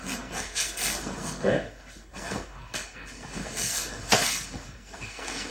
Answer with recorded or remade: remade